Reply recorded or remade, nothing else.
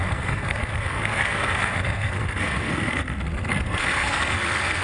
remade